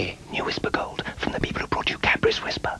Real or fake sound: real